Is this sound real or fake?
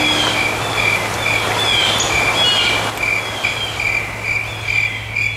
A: real